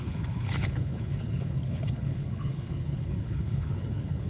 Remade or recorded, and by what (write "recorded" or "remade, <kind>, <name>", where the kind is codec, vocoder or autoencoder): remade, codec, HILCodec